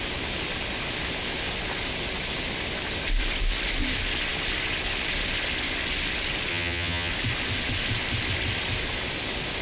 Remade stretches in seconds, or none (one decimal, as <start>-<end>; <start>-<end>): 6.5-7.1